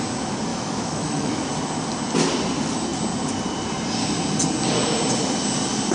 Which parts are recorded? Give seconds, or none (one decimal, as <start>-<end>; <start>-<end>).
0.0-0.5; 1.5-5.9